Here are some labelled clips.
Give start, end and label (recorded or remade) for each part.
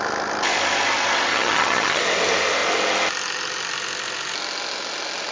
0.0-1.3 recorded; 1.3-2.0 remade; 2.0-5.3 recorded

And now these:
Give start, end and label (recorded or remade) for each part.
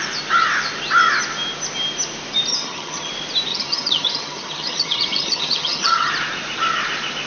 0.0-2.5 recorded; 2.5-3.1 remade; 3.1-3.5 recorded; 3.5-6.1 remade; 6.1-7.3 recorded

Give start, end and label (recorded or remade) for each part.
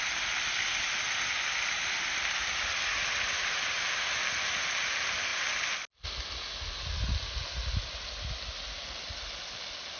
0.0-10.0 recorded